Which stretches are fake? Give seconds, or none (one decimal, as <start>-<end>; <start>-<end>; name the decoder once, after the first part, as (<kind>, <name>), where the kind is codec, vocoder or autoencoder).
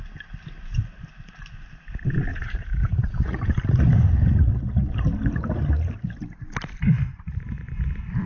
2.3-3.4 (vocoder, Vocos)